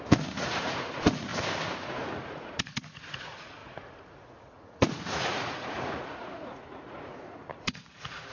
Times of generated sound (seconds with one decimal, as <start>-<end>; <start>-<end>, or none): 0.0-1.3; 1.8-8.3